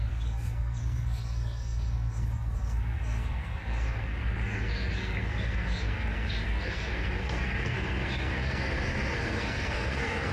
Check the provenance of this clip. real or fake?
fake